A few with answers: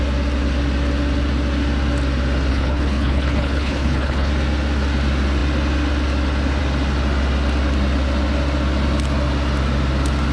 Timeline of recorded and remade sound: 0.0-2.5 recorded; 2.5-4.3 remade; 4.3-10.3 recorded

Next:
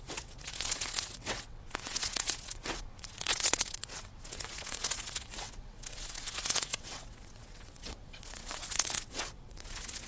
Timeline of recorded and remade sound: 0.0-10.1 remade

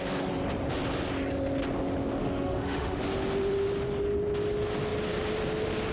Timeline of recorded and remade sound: 0.0-2.2 recorded; 2.2-3.0 remade; 3.0-5.9 recorded